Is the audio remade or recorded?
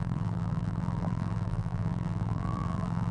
remade